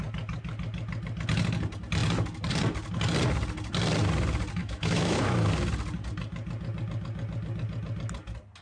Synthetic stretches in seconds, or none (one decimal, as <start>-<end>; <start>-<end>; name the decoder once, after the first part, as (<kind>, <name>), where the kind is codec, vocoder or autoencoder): 4.6-5.5 (autoencoder, DAC-VAE)